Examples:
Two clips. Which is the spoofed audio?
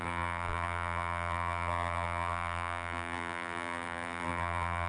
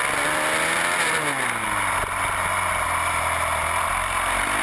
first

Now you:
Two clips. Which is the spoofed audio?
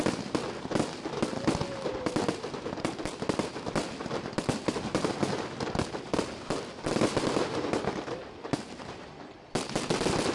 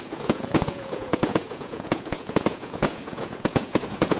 second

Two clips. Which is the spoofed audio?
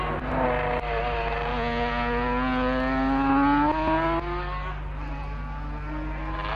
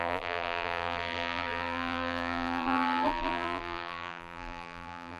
second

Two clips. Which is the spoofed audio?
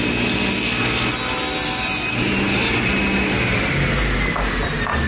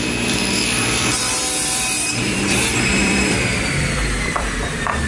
second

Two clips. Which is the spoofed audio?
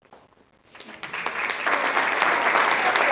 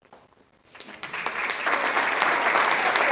second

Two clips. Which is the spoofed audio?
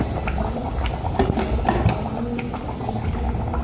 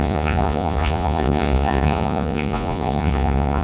second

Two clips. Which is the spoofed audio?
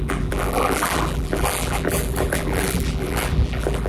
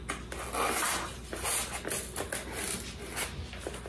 first